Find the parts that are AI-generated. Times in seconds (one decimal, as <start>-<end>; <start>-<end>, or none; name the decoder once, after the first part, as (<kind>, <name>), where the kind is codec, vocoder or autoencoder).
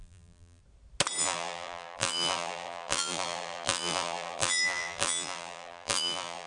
0.0-0.6 (vocoder, BigVGAN v2); 1.2-6.5